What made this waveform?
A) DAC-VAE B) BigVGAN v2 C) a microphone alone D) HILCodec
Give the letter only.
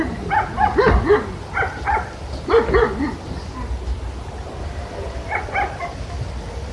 C